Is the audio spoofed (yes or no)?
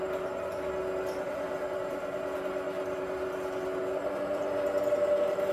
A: no